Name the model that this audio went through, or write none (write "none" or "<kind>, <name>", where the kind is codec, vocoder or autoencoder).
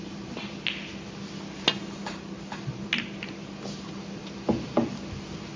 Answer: none